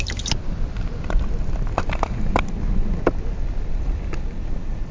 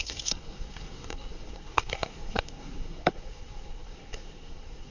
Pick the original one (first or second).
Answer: first